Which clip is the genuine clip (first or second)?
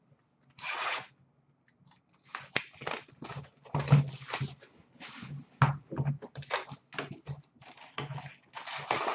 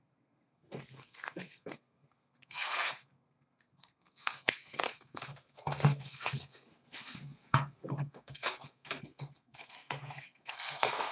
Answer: first